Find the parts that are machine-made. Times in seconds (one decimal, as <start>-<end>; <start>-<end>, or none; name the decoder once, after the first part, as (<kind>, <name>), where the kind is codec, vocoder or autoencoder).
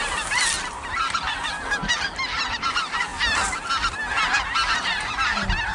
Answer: none